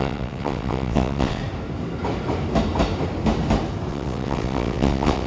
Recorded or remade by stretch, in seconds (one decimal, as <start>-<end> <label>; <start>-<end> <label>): 0.0-1.4 remade; 1.4-3.9 recorded; 3.9-5.3 remade